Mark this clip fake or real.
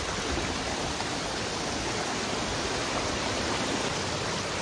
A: real